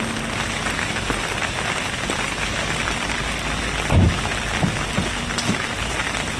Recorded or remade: recorded